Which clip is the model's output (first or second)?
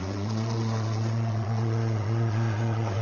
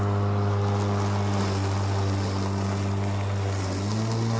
first